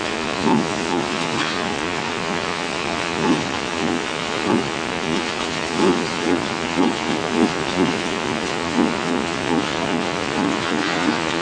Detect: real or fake fake